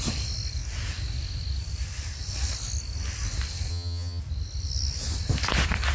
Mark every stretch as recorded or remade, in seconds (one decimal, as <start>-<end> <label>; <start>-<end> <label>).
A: 0.0-3.7 recorded; 3.7-4.2 remade; 4.2-5.9 recorded

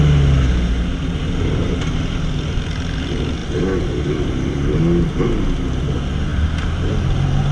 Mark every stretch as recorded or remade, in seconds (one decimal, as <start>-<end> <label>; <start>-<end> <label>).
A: 0.0-3.4 recorded; 3.4-4.7 remade; 4.7-7.5 recorded

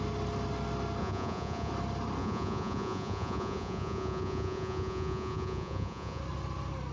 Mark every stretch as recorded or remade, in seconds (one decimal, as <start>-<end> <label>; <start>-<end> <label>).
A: 0.0-1.0 recorded; 1.0-1.7 remade; 1.7-2.2 recorded; 2.2-6.2 remade; 6.2-6.9 recorded